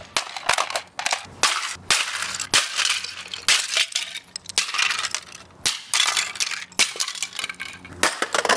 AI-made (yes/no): no